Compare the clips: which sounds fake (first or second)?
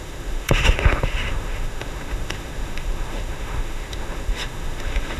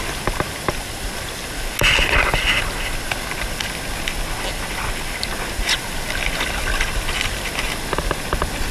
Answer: first